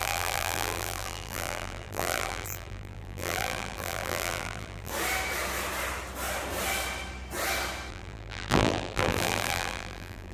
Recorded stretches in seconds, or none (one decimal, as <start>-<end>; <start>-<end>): 4.9-7.9